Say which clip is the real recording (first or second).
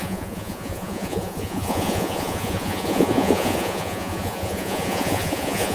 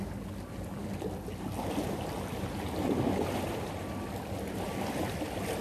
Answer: second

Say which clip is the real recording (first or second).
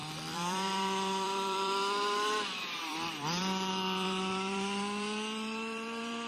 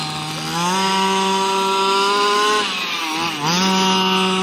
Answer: second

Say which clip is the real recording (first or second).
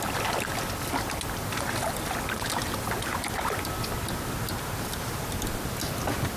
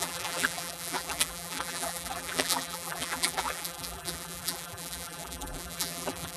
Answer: first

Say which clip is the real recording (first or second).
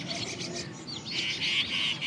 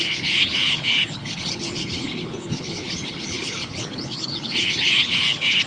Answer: first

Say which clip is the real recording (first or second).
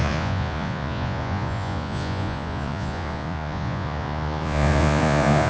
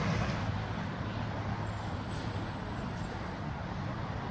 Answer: second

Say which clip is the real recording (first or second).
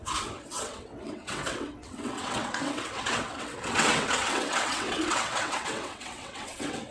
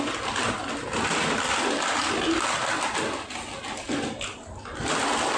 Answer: second